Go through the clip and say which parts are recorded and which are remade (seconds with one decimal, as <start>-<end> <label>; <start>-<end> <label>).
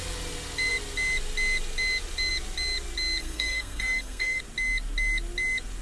0.0-3.2 recorded; 3.2-4.4 remade; 4.4-5.8 recorded